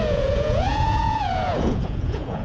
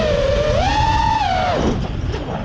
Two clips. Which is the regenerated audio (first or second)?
first